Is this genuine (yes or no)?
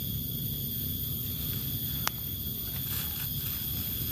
yes